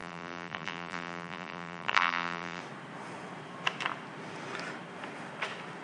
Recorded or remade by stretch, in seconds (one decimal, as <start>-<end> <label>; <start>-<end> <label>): 0.0-2.6 remade; 2.6-5.8 recorded